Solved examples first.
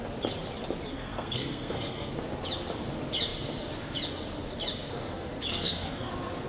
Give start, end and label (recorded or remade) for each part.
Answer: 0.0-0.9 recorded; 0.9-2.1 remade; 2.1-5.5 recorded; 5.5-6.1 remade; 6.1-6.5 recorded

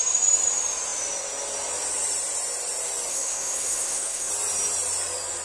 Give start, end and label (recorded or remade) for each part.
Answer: 0.0-3.1 recorded; 3.1-4.3 remade; 4.3-5.4 recorded

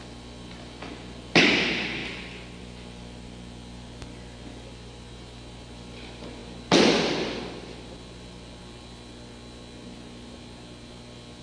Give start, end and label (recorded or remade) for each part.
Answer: 0.0-11.4 recorded

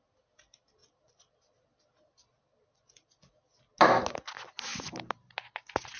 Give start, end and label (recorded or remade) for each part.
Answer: 0.0-6.0 recorded

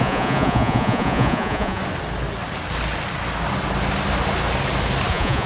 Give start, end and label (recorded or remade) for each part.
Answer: 0.0-1.8 remade; 1.8-5.1 recorded; 5.1-5.5 remade